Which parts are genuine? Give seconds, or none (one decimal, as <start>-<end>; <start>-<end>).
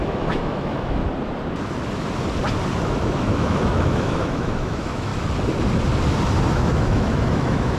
1.0-2.8; 5.1-6.5